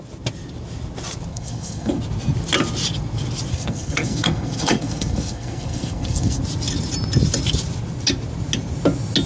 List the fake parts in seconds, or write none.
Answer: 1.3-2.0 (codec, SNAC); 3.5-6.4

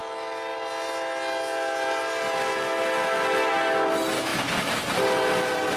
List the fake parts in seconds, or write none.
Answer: none

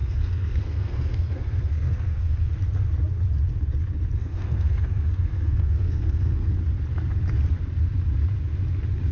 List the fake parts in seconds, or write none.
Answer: 0.0-2.5 (codec, SNAC); 4.2-6.5

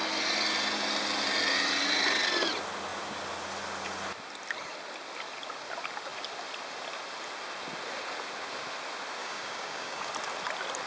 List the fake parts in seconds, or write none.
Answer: 9.2-10.1 (codec, DAC)

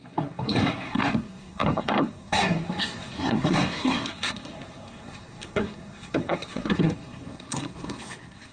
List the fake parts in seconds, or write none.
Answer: 0.0-8.5 (codec, SNAC)

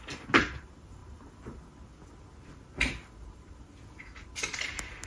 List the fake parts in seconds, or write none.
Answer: none

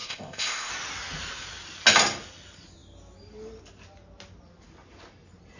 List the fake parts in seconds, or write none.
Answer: 0.0-0.7 (codec, ZipCodec)

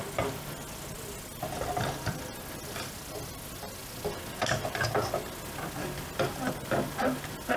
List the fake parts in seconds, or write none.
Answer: none